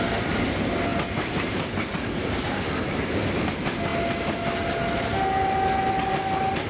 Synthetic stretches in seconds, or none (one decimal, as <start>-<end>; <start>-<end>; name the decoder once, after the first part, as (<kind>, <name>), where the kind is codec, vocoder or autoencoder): none